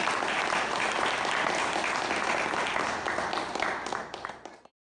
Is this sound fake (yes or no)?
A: no